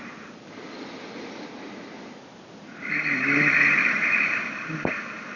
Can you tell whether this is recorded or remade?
recorded